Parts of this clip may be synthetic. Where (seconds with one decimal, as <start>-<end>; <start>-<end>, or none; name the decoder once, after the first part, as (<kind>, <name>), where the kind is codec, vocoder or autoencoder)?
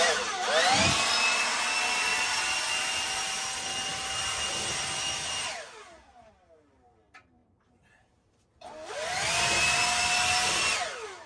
none